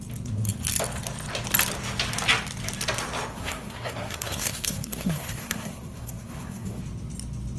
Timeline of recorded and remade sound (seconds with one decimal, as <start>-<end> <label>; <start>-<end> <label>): 0.0-3.3 recorded; 3.3-6.8 remade; 6.8-7.6 recorded